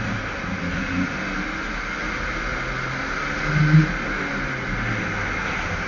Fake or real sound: real